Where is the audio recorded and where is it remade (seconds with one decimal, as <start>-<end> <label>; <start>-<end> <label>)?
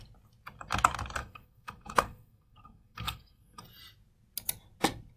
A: 0.0-1.2 recorded; 1.2-3.6 remade; 3.6-5.2 recorded